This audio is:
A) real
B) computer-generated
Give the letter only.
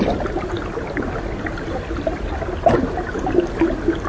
A